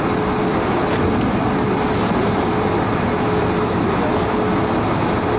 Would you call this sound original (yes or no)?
yes